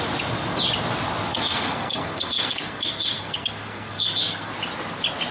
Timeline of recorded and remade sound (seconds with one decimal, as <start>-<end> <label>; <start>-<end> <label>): 0.0-1.3 recorded; 1.3-4.5 remade; 4.5-5.3 recorded